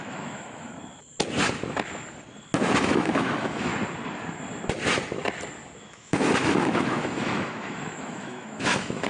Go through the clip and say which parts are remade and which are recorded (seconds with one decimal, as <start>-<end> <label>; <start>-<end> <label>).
0.0-0.7 remade; 0.7-2.8 recorded; 2.8-3.7 remade; 3.7-5.8 recorded; 5.8-9.1 remade